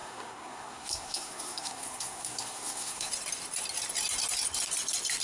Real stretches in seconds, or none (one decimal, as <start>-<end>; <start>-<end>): 3.1-5.2